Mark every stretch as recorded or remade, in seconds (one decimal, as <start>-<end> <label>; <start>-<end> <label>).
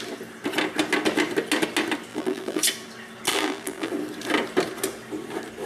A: 0.0-2.1 recorded; 2.1-2.6 remade; 2.6-3.3 recorded; 3.3-3.9 remade; 3.9-5.7 recorded